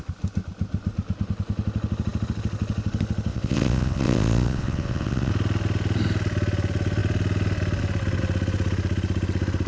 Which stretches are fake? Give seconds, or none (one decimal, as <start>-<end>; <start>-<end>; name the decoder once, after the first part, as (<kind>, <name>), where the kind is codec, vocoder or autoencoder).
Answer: 3.3-5.3 (vocoder, WaveNeXt)